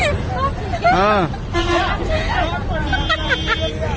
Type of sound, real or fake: real